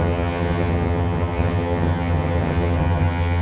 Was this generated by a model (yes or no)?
yes